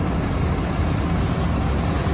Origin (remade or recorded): recorded